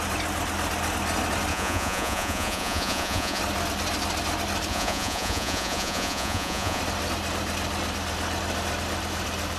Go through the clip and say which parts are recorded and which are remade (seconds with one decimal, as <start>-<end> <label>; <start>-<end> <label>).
0.0-1.5 recorded; 1.5-3.4 remade; 3.4-4.7 recorded; 4.7-6.8 remade; 6.8-9.6 recorded